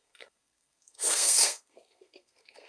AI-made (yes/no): yes